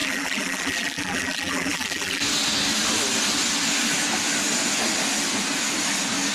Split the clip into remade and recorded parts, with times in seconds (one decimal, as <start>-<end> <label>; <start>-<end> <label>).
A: 0.0-2.2 remade; 2.2-6.3 recorded